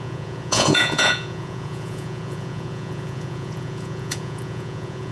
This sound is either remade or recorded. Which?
remade